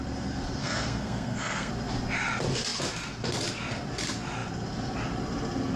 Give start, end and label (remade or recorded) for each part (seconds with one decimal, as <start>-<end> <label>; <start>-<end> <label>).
0.0-0.6 recorded; 0.6-1.7 remade; 1.7-5.8 recorded